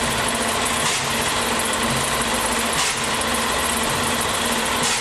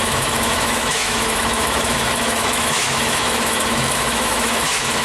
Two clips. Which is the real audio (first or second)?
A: first